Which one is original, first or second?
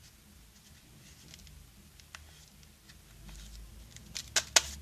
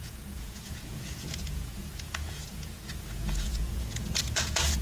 first